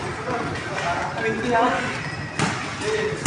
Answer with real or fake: real